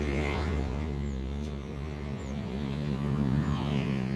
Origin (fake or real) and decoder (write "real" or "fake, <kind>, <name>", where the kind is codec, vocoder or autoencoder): fake, vocoder, Vocos